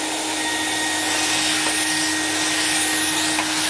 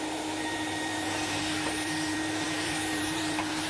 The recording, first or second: first